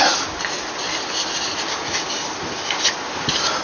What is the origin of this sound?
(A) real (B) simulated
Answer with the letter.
A